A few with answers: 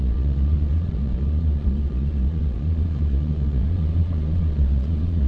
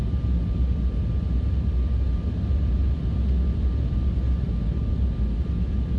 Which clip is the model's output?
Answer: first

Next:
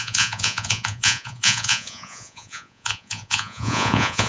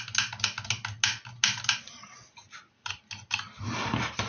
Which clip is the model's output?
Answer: first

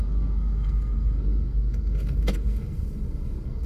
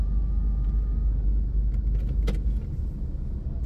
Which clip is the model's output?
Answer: first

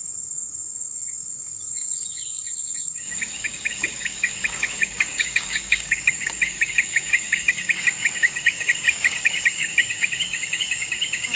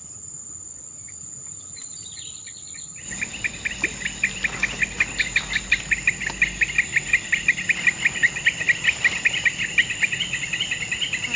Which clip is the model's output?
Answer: first